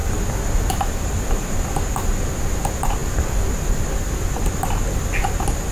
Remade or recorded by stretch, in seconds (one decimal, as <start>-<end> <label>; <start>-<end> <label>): 0.0-5.7 recorded